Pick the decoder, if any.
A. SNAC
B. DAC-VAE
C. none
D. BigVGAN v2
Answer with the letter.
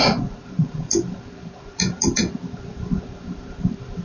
D